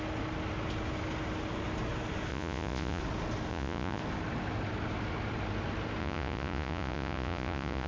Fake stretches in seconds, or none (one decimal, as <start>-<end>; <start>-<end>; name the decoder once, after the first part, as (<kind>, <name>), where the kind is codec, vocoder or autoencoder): 2.3-3.0 (vocoder, Vocos); 3.5-4.0; 6.0-7.9